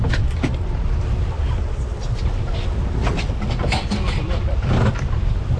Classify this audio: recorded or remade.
recorded